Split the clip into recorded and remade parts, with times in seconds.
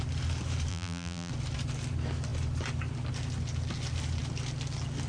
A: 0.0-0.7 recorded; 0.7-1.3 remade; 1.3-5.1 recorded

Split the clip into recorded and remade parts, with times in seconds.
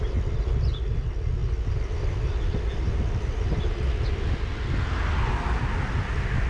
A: 0.0-6.5 recorded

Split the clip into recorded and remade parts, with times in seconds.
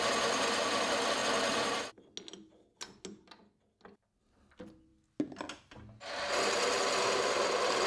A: 0.0-7.9 recorded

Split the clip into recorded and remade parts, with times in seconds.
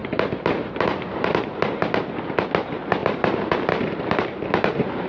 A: 0.0-1.9 remade; 1.9-3.0 recorded; 3.0-5.1 remade